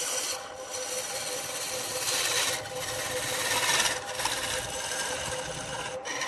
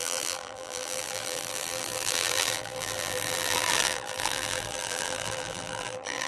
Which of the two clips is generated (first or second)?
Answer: second